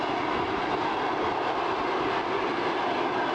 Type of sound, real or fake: real